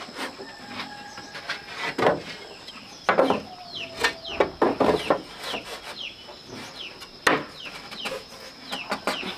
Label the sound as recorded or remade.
recorded